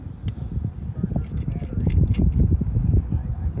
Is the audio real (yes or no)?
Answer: yes